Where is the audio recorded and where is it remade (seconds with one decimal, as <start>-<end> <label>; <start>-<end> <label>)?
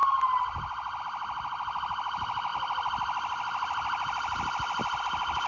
0.0-5.5 recorded